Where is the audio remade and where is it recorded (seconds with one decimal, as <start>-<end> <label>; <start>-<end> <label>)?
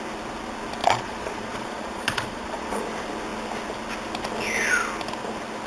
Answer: 0.0-0.8 recorded; 0.8-2.8 remade; 2.8-5.7 recorded